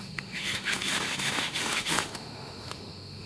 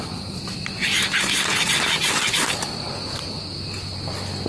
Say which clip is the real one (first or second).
second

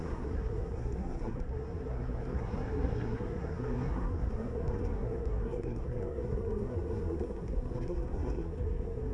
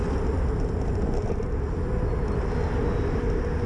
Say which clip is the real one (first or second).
second